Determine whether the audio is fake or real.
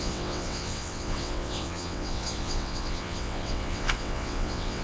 fake